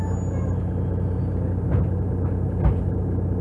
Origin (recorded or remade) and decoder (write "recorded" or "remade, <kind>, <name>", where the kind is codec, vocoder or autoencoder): recorded